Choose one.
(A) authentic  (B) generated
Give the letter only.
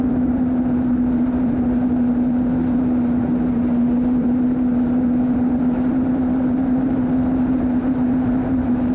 B